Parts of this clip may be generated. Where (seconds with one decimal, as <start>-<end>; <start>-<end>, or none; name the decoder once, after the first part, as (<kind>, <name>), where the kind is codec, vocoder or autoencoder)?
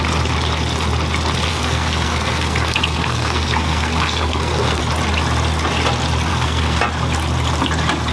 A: 1.5-4.8 (codec, SNAC); 6.3-6.8